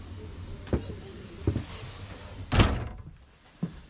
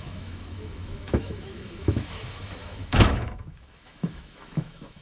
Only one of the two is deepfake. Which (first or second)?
second